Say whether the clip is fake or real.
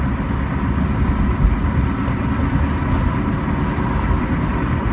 real